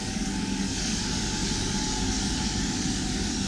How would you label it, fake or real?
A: fake